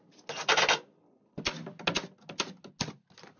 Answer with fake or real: real